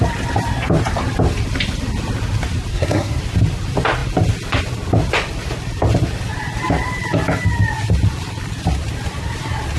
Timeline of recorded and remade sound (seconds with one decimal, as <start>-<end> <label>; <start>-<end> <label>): 0.0-2.7 recorded; 2.7-3.2 remade; 3.2-9.8 recorded